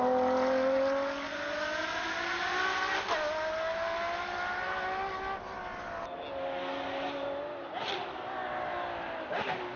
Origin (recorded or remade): recorded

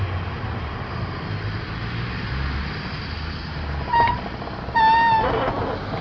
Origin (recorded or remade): recorded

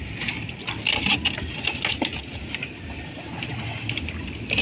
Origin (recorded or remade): recorded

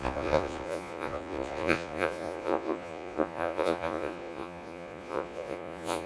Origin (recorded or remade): remade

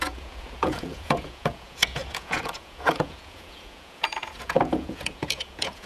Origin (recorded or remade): remade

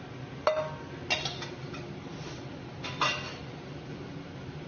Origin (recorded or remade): recorded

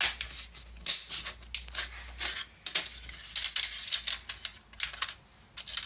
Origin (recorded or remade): recorded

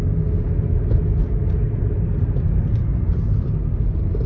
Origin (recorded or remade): recorded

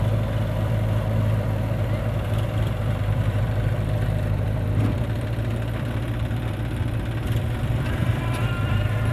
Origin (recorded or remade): remade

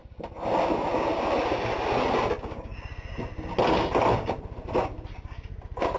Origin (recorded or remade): recorded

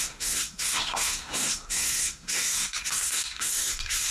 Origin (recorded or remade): remade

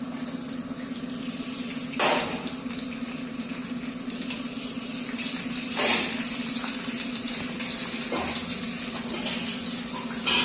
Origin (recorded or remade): recorded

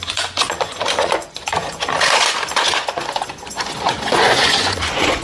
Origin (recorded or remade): remade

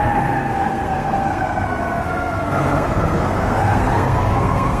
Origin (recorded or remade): remade